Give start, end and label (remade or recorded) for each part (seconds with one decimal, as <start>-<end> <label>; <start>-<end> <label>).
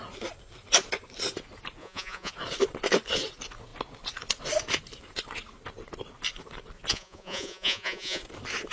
0.0-1.8 recorded; 1.8-2.3 remade; 2.3-6.9 recorded; 6.9-8.2 remade; 8.2-8.7 recorded